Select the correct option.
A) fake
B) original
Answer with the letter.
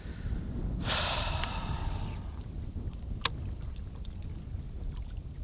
B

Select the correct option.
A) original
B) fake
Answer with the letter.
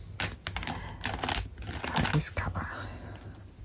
A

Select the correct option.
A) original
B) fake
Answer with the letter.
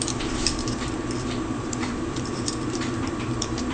B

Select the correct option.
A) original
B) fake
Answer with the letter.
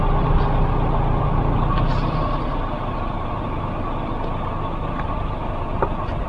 A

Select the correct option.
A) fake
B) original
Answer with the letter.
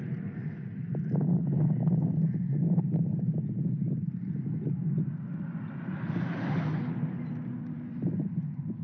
B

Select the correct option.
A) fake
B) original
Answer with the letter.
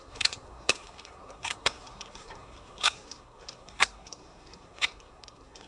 A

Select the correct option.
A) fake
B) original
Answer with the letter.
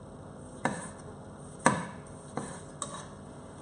B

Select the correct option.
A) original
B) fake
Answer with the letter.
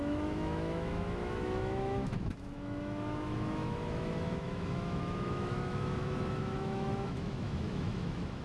B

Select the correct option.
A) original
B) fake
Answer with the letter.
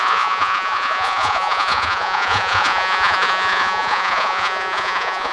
B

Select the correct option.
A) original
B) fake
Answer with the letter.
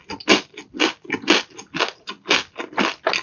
A